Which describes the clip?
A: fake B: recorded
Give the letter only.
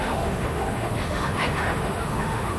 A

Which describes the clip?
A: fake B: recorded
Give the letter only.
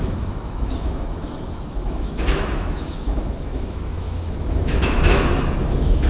A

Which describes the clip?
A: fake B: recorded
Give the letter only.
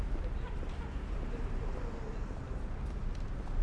B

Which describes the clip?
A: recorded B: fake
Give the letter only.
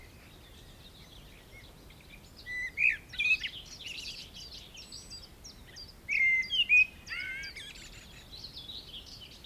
A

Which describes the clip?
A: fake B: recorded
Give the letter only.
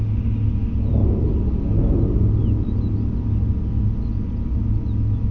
B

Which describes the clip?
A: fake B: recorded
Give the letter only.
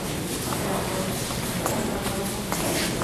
B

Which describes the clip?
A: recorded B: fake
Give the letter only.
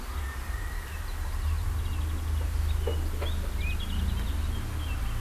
A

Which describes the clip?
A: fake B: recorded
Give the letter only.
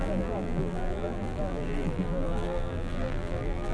A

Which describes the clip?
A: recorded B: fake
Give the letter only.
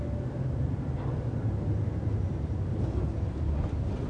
A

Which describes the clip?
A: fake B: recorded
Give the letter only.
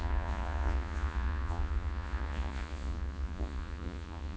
A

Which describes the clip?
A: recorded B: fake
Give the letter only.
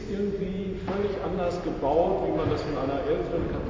A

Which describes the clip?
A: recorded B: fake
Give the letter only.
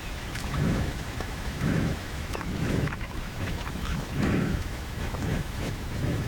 B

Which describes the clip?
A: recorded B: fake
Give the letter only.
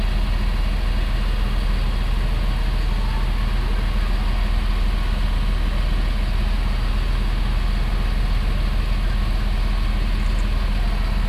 A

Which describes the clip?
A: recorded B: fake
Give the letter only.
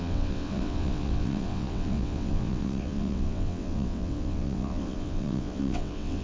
B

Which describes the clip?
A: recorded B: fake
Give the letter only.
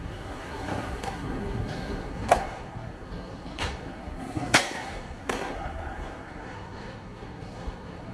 B